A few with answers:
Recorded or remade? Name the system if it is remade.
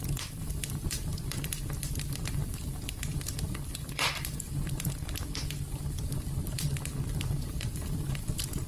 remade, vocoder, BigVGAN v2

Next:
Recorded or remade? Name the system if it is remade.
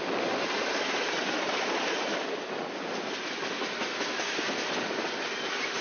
recorded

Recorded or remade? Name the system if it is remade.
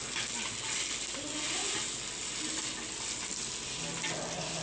recorded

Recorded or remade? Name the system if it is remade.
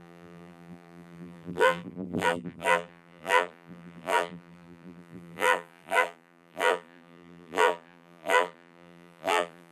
remade, vocoder, BigVGAN v2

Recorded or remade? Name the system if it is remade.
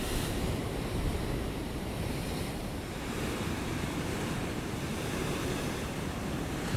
remade, vocoder, BigVGAN v2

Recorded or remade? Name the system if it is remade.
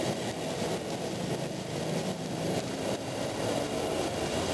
remade, vocoder, BigVGAN v2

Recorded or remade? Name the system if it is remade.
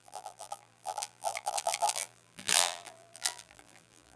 remade, vocoder, BigVGAN v2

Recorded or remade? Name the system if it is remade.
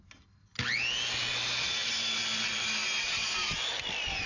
recorded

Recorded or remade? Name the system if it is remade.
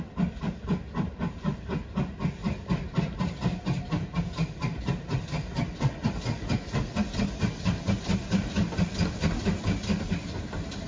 recorded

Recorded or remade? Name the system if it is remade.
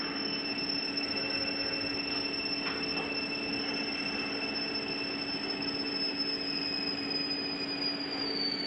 recorded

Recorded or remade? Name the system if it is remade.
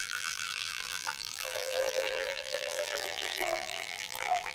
remade, vocoder, BigVGAN v2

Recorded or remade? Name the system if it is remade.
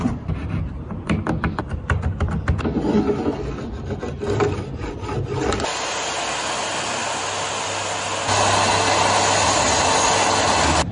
recorded